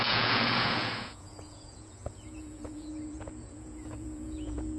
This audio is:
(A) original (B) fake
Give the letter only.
B